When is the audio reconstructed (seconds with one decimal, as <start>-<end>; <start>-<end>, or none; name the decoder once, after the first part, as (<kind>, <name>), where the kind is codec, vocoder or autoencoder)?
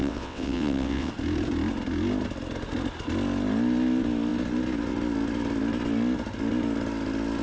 0.0-1.1 (vocoder, WaveNeXt)